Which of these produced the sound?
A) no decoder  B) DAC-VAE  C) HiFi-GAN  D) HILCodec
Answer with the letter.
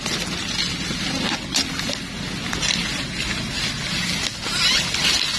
A